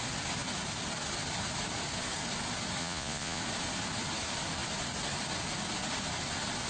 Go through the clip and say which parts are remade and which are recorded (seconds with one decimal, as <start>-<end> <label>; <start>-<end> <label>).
0.0-2.8 recorded; 2.8-3.4 remade; 3.4-6.7 recorded